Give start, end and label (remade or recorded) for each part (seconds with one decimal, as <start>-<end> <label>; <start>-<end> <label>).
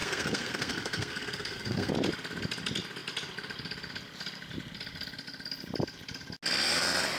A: 0.0-1.9 remade; 1.9-7.2 recorded